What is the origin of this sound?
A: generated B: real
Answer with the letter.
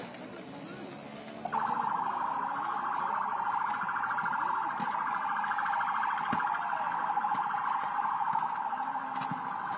B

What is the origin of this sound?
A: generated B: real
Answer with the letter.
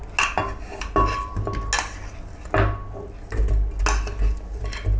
B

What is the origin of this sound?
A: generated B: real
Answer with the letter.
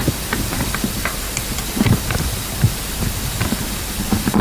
A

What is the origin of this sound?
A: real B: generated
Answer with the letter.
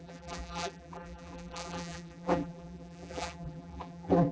B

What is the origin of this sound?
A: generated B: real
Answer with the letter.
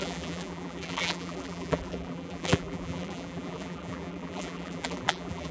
A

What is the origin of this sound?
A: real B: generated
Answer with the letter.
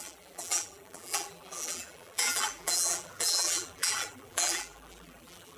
B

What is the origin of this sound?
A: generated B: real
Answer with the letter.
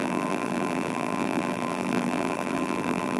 A